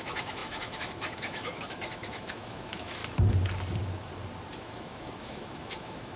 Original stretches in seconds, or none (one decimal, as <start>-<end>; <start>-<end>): 3.0-4.6